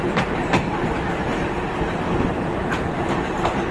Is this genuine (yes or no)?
no